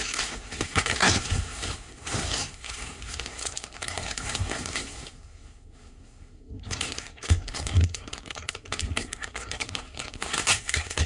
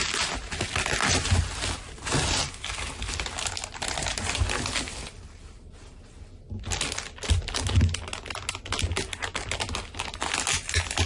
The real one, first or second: second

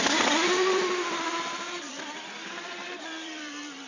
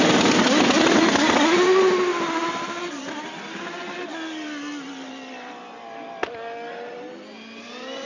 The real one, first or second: second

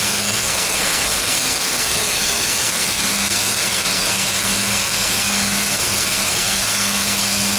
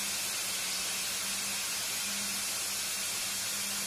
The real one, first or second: second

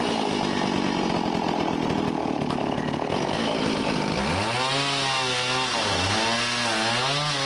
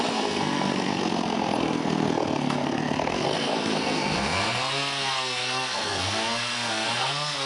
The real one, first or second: first